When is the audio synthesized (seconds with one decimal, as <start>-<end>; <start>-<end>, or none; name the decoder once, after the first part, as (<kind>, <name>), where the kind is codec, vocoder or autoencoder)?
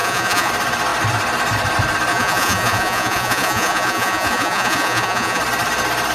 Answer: 0.0-0.5 (vocoder, Vocos); 2.1-5.4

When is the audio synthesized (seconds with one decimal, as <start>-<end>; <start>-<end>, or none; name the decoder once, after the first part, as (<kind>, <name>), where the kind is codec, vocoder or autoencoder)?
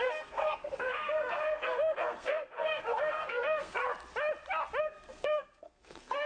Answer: 0.0-3.8 (codec, SNAC); 4.8-6.3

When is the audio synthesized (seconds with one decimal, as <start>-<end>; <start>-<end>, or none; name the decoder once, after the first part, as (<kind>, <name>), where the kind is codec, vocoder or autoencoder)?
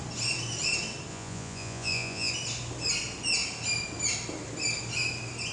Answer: 1.1-2.3 (vocoder, Vocos)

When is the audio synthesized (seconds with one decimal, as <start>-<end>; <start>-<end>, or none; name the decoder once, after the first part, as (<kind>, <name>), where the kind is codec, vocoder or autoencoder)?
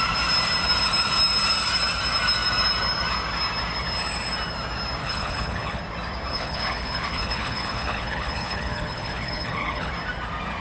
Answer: 5.0-5.8 (codec, HILCodec); 6.3-9.9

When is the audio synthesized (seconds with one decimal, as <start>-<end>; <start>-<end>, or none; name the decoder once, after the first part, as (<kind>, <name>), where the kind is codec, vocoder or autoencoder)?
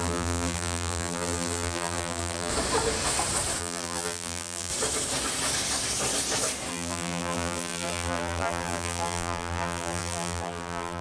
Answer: 0.0-2.5 (vocoder, BigVGAN v2); 3.6-4.7; 6.7-11.0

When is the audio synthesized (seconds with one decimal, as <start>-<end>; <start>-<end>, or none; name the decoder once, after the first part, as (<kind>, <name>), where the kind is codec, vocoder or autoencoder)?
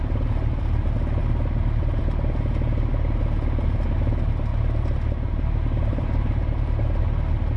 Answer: 4.5-7.0 (vocoder, BigVGAN v2)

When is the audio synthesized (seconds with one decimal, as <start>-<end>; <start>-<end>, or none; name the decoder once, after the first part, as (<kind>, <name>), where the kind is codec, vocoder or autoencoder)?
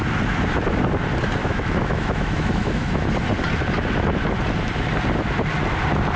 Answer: 1.4-3.1 (autoencoder, DAC-VAE)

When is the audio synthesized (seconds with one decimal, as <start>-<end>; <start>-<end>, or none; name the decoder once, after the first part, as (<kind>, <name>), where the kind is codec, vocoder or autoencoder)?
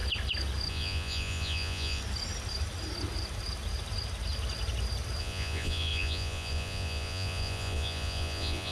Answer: 0.7-2.0 (vocoder, Vocos); 5.2-8.7